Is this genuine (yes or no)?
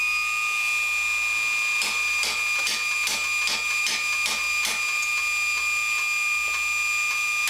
yes